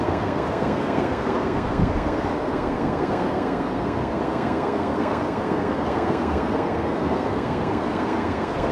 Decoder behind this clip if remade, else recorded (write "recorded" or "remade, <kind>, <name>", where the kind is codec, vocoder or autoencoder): remade, codec, SNAC